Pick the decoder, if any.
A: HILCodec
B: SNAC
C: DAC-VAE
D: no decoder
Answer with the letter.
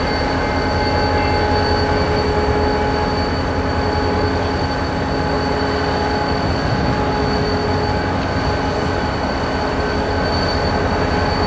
D